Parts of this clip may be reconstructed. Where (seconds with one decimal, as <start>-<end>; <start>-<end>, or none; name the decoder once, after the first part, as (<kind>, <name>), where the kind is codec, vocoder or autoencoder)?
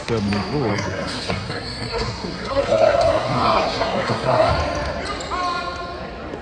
0.7-4.5 (codec, SNAC)